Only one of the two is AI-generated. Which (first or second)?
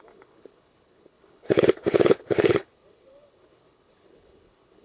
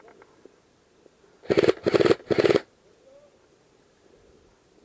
first